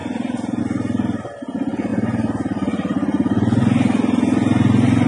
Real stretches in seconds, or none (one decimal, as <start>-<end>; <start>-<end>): 0.6-1.9